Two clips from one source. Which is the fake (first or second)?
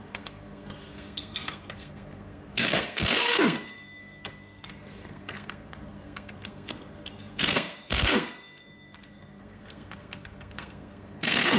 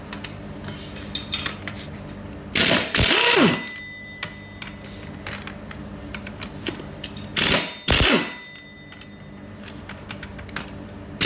first